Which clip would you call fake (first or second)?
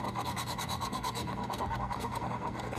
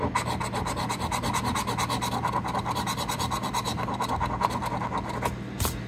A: first